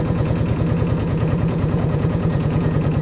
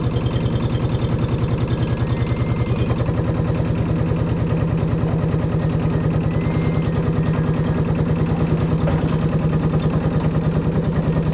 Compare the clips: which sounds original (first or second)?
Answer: second